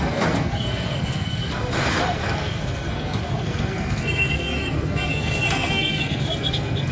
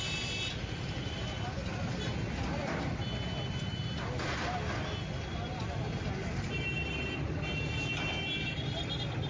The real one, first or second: second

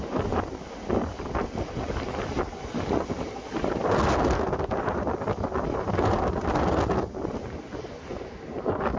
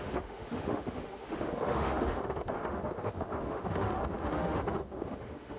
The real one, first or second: first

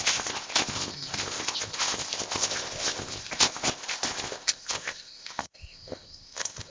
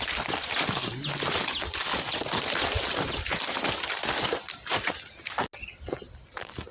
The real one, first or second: second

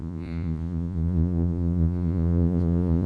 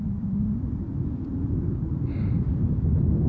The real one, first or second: second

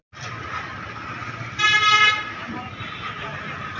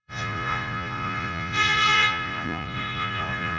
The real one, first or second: first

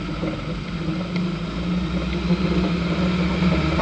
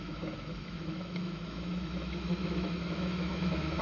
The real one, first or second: first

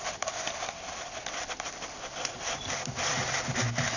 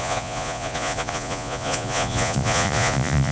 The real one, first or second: first